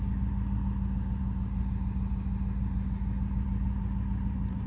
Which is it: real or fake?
real